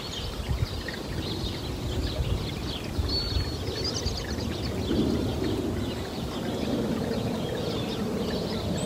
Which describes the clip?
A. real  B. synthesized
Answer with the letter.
A